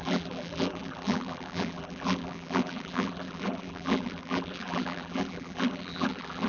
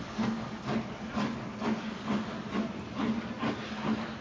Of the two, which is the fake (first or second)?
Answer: first